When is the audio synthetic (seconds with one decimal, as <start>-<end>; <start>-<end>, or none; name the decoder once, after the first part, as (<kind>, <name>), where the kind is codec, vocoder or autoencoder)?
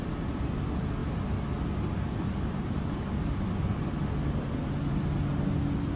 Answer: none